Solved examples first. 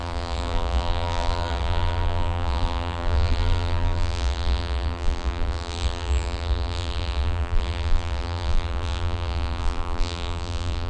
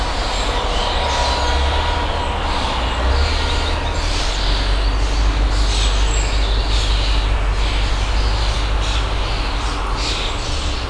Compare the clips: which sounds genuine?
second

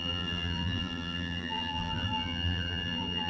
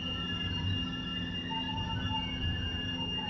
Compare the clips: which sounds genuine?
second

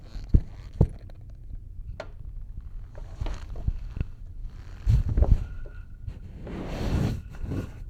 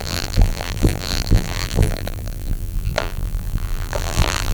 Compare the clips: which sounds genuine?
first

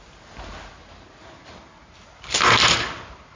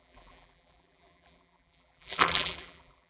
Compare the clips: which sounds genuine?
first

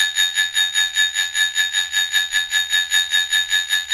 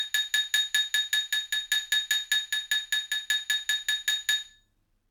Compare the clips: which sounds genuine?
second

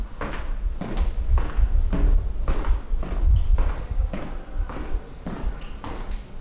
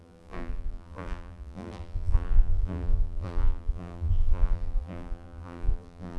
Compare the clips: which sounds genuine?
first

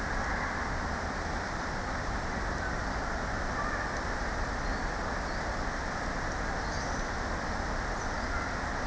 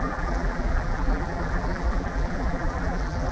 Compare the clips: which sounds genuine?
first